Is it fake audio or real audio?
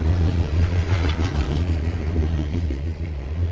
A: fake